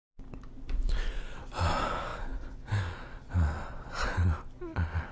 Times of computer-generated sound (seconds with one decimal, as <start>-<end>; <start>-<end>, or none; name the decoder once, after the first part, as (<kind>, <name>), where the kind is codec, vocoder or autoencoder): none